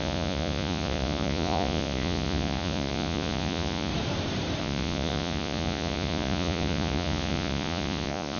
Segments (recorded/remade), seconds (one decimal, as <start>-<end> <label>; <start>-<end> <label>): 0.0-3.9 remade; 3.9-4.6 recorded; 4.6-8.4 remade

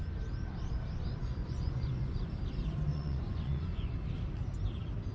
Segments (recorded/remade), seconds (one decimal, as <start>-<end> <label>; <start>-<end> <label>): 0.0-1.2 recorded; 1.2-2.3 remade; 2.3-2.9 recorded; 2.9-3.9 remade; 3.9-5.1 recorded

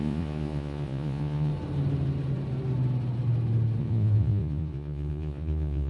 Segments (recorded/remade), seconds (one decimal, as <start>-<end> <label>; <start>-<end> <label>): 0.0-1.5 remade; 1.5-3.8 recorded; 3.8-5.9 remade

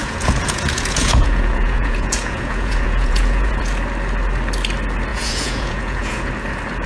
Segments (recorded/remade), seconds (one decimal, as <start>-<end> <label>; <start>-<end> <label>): 0.0-3.6 remade; 3.6-5.1 recorded; 5.1-6.3 remade; 6.3-6.9 recorded

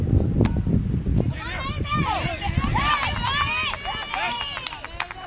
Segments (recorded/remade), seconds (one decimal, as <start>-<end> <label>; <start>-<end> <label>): 0.0-5.3 recorded